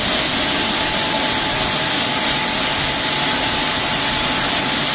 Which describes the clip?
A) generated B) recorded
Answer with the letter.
B